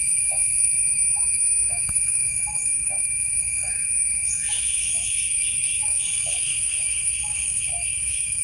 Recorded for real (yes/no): no